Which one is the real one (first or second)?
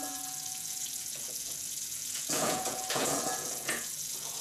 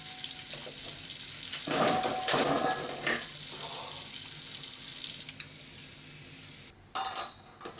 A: second